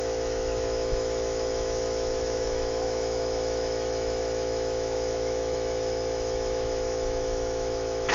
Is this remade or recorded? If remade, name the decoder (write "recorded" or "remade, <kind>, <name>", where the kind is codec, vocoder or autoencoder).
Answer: remade, autoencoder, DAC-VAE